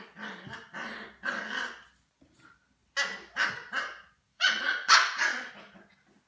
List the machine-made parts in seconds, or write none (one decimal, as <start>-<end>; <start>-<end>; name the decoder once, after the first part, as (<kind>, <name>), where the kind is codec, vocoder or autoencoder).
4.3-5.5 (vocoder, Vocos)